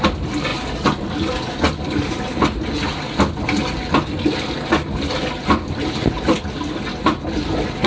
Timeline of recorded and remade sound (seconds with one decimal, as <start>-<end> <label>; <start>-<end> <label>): 0.0-7.9 recorded